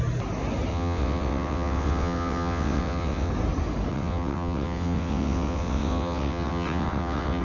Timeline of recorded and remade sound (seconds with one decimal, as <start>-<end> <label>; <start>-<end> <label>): 0.0-0.7 recorded; 0.7-3.3 remade; 3.3-3.9 recorded; 3.9-7.4 remade